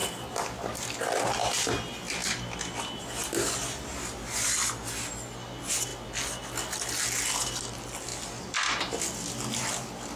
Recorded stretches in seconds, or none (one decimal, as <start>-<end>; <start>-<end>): 0.0-10.2